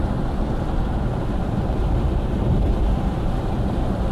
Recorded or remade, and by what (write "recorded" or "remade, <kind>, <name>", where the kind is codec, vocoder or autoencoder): remade, vocoder, BigVGAN v2